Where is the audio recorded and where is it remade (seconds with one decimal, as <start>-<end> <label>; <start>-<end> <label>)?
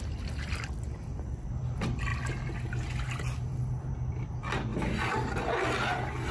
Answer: 0.0-6.3 recorded